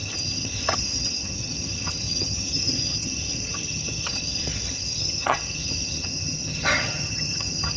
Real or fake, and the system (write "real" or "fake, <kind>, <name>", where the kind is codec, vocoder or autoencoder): fake, vocoder, HiFi-GAN